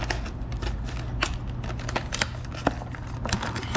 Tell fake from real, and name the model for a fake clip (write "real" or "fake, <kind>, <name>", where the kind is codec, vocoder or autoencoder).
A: real